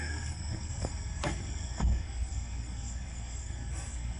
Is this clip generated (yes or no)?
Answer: yes